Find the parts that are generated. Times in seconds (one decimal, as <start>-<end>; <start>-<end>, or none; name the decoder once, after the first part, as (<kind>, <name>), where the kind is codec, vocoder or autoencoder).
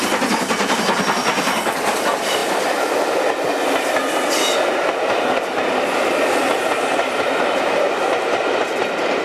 none